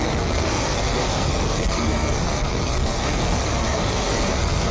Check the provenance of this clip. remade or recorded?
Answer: remade